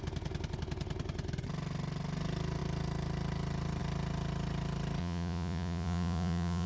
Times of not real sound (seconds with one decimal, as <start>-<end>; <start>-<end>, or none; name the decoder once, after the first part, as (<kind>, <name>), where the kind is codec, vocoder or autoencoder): 5.0-6.7 (vocoder, Vocos)